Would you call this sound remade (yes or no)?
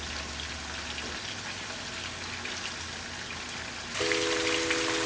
no